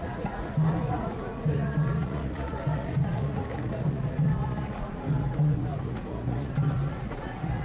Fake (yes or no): yes